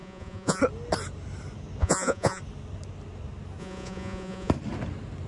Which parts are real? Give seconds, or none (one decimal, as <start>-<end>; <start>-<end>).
0.6-1.8; 2.4-3.6; 4.5-5.3